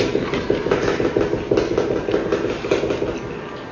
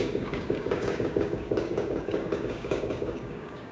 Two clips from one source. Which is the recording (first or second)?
first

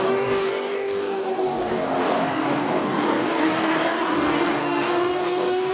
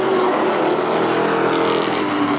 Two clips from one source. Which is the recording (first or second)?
second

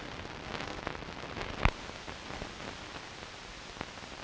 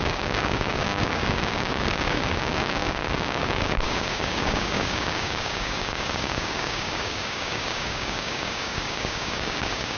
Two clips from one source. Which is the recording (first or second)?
first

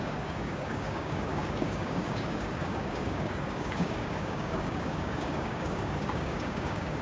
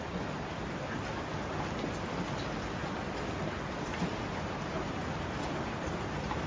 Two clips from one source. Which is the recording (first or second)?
second